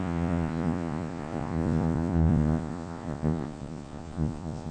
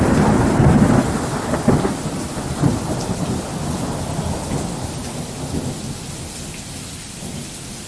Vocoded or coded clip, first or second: first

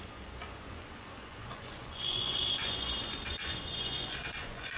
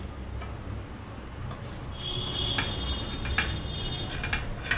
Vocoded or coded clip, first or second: first